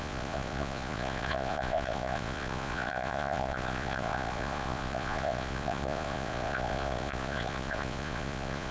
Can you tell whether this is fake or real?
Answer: fake